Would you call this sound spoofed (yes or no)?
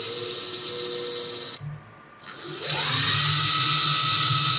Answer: no